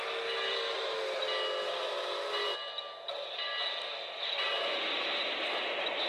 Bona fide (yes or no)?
yes